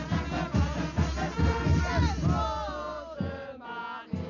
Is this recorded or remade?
recorded